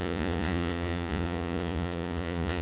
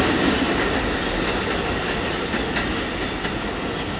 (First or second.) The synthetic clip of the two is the first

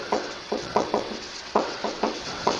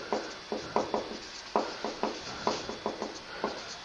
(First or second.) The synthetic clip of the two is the first